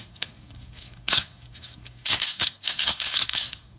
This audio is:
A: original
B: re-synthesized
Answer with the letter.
B